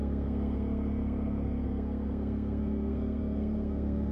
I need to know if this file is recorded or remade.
remade